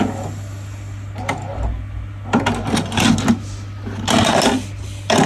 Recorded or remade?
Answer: recorded